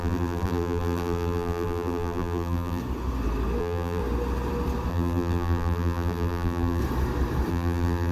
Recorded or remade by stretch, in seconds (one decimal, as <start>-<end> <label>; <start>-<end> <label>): 0.0-2.8 remade; 2.8-3.6 recorded; 3.6-4.0 remade; 4.0-4.9 recorded; 4.9-6.8 remade; 6.8-7.5 recorded; 7.5-8.1 remade